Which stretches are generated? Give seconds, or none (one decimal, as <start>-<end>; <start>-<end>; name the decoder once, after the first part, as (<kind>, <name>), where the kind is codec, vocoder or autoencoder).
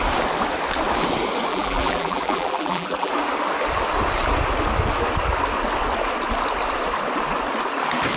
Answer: 1.5-3.1 (vocoder, BigVGAN v2)